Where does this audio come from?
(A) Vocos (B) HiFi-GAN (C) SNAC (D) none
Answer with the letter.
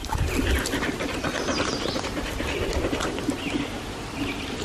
D